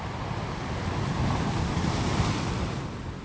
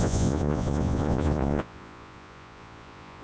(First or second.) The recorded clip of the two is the first